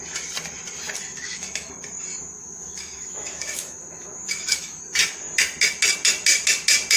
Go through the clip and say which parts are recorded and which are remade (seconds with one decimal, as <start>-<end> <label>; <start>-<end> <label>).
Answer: 0.0-1.1 recorded; 1.1-1.7 remade; 1.7-2.1 recorded; 2.1-4.8 remade; 4.8-7.0 recorded